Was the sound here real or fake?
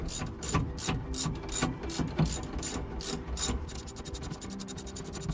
real